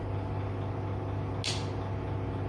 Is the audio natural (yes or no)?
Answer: yes